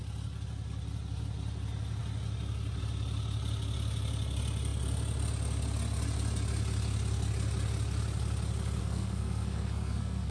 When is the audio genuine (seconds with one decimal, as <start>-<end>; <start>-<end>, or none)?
0.0-8.8